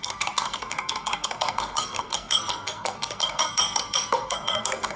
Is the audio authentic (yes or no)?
no